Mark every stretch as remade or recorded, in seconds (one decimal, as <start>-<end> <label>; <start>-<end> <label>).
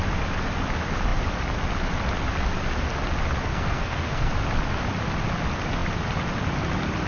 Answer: 0.0-3.5 recorded; 3.5-4.3 remade; 4.3-7.1 recorded